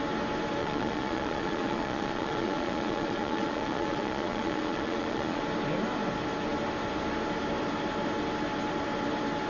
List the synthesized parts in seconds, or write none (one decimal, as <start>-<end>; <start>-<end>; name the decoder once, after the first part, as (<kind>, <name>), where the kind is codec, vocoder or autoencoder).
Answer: 0.6-5.4 (vocoder, Vocos)